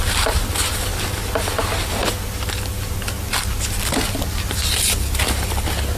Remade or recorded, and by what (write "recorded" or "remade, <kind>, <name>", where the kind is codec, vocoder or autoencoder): recorded